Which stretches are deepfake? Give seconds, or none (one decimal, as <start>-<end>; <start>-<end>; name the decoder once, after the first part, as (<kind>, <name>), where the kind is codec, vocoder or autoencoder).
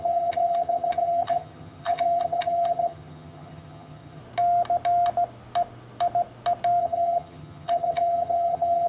0.0-4.2 (vocoder, HiFi-GAN); 6.8-8.9